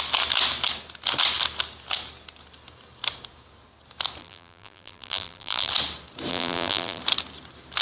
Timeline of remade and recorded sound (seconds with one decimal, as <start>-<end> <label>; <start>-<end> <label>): 0.0-4.2 recorded; 4.2-5.7 remade; 5.7-6.3 recorded; 6.3-7.0 remade; 7.0-7.8 recorded